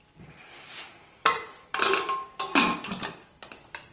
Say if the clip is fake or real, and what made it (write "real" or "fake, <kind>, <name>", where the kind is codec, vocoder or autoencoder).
real